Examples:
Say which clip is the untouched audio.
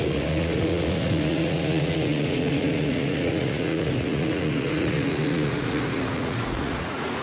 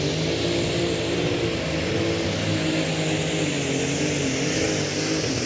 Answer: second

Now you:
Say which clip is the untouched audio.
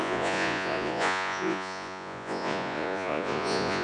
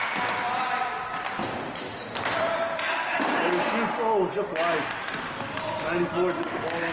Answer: second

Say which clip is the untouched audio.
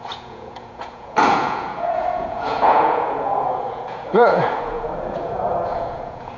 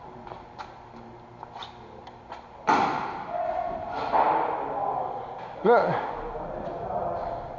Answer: second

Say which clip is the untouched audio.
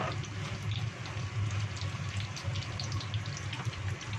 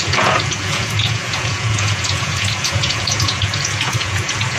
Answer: first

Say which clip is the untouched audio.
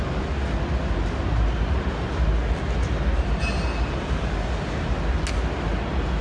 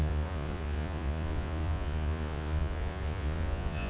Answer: first